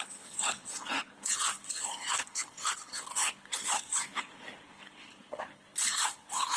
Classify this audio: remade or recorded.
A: remade